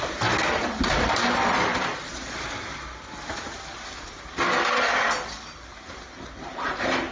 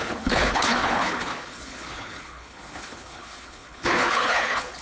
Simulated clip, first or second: second